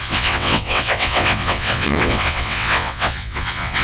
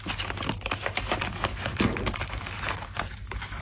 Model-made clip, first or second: first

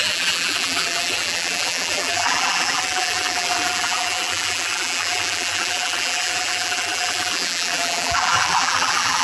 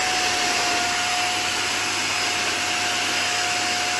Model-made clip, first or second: first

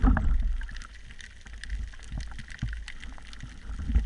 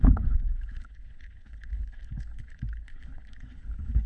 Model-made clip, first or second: second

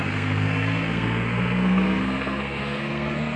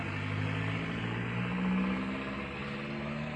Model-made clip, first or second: first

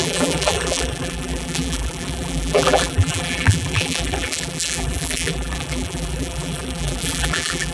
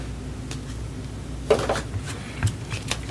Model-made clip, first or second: first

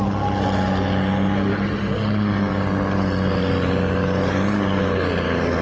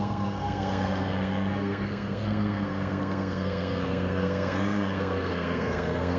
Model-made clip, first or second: second